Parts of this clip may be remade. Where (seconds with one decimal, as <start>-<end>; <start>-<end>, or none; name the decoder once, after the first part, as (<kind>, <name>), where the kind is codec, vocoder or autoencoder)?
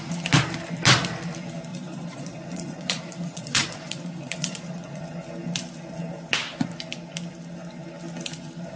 1.7-5.0 (vocoder, Vocos)